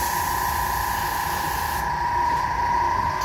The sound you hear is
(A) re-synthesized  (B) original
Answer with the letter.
B